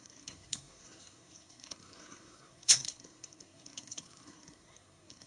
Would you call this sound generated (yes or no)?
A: yes